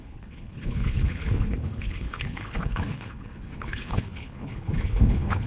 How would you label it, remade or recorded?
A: remade